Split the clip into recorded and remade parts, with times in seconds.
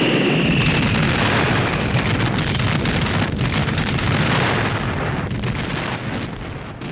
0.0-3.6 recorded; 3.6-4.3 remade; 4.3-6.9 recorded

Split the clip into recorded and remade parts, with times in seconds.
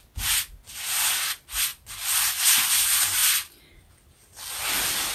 0.0-5.1 recorded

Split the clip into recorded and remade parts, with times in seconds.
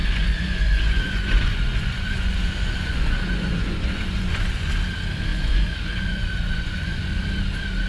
0.0-4.7 remade; 4.7-5.3 recorded; 5.3-7.2 remade; 7.2-7.9 recorded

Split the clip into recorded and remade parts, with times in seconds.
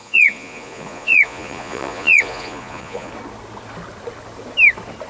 0.0-3.1 remade; 3.1-5.1 recorded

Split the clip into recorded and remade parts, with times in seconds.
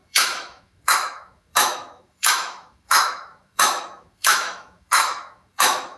0.0-6.0 remade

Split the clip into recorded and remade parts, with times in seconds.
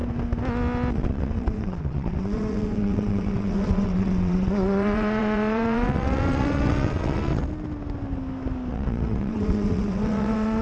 0.0-0.9 recorded; 0.9-7.4 remade; 7.4-8.7 recorded; 8.7-10.6 remade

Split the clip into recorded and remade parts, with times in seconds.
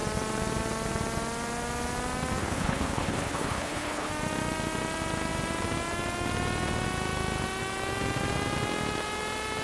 0.0-2.4 recorded; 2.4-4.1 remade; 4.1-9.6 recorded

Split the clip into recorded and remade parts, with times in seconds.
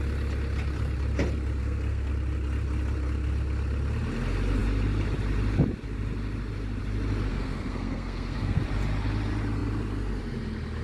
0.0-1.6 recorded; 1.6-2.1 remade; 2.1-7.3 recorded; 7.3-8.6 remade; 8.6-10.8 recorded